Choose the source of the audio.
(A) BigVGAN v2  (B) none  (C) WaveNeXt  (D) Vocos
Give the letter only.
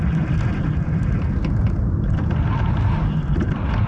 B